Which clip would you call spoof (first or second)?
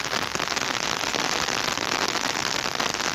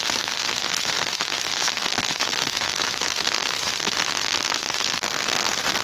second